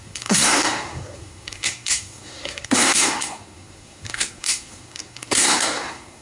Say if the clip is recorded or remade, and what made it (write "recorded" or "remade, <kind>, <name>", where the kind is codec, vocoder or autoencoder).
remade, codec, SNAC